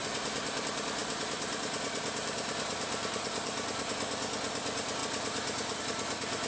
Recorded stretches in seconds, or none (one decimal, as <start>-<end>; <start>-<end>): 0.6-1.0; 3.9-6.5